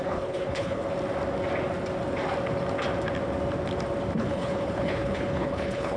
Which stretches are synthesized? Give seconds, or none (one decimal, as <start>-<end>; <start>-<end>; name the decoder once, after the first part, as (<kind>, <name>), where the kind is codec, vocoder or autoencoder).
0.0-0.8 (codec, HILCodec); 4.2-6.0